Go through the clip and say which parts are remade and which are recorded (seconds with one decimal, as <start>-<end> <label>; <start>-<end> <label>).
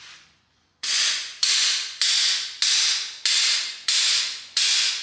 0.0-2.6 remade; 2.6-3.7 recorded; 3.7-5.0 remade